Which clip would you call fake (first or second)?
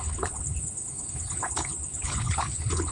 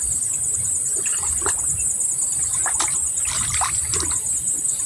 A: first